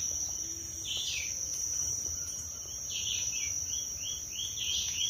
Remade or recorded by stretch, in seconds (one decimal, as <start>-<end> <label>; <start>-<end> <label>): 0.0-1.5 recorded; 1.5-4.6 remade; 4.6-5.1 recorded